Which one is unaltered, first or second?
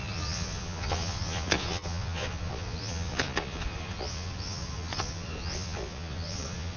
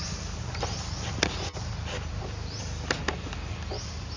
second